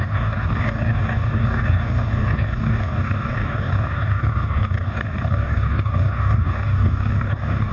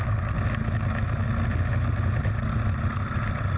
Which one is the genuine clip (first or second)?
second